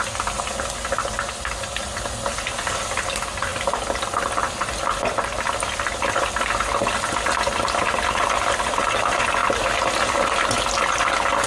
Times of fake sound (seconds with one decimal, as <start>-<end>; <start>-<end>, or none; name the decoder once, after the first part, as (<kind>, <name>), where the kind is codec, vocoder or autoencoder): none